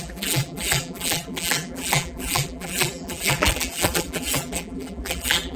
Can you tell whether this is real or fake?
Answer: fake